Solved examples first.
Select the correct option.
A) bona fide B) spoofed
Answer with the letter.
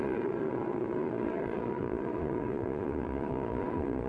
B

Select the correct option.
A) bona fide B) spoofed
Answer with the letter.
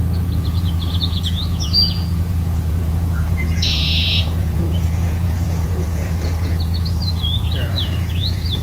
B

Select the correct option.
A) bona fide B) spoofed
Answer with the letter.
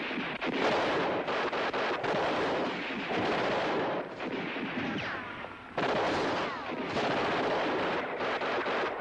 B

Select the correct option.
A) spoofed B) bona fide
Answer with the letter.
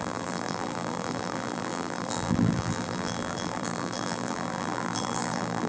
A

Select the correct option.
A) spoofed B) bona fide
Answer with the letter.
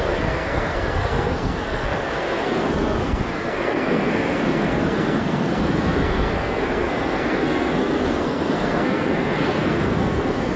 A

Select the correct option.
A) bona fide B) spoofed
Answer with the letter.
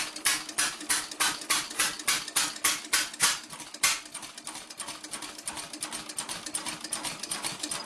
A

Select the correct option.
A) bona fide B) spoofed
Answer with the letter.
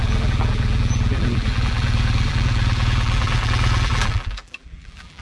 B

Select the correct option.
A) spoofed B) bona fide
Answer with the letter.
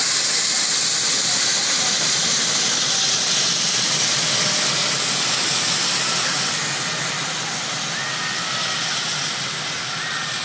B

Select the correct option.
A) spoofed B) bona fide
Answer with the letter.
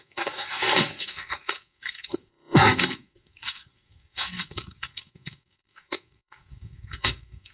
A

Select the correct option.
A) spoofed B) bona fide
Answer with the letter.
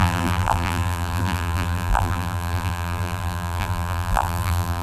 A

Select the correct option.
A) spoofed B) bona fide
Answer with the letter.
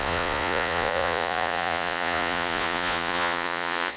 A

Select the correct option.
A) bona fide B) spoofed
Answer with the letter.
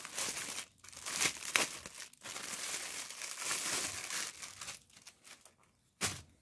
A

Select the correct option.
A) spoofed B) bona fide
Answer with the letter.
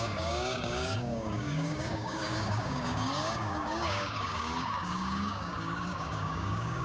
A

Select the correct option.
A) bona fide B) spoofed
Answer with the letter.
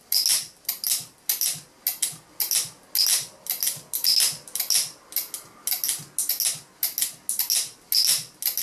A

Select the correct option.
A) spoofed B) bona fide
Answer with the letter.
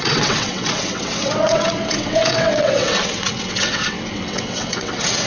A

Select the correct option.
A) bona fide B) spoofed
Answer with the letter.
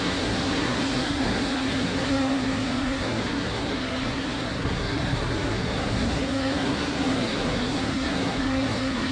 B